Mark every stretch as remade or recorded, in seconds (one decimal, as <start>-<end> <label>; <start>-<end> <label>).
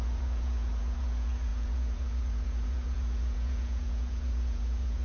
0.0-5.0 remade